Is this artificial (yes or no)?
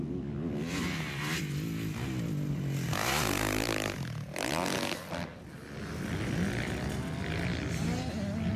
no